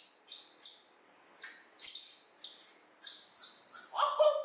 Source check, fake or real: real